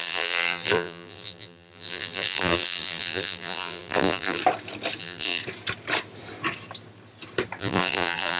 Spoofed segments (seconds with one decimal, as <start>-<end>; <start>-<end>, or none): 0.0-4.4; 5.0-5.4; 7.6-8.4

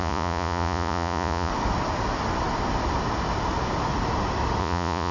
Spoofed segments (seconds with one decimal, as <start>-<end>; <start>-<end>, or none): 0.0-1.5; 4.6-5.1

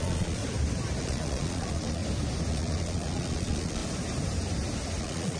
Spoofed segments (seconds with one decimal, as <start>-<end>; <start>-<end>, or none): 0.0-0.4; 1.0-2.0; 2.5-3.8; 5.0-5.4

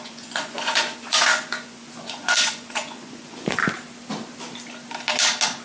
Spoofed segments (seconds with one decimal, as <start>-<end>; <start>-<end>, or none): 0.0-3.6

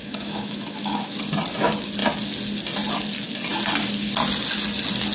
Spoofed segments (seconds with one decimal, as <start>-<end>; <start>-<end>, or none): 0.0-1.2

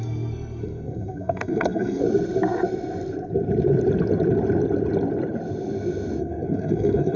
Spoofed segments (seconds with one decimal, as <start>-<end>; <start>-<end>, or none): 0.0-2.0; 6.2-7.2

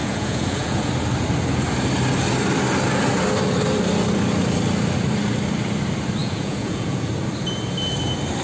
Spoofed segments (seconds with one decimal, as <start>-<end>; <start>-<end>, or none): 0.0-0.9; 6.2-7.1